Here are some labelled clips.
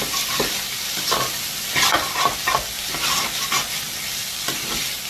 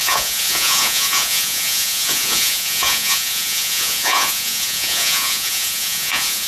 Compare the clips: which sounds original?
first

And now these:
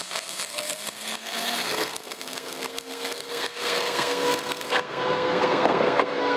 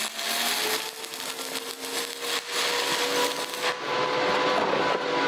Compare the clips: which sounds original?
second